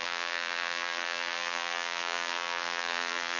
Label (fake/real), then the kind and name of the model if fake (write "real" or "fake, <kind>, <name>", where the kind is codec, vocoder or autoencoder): fake, vocoder, BigVGAN v2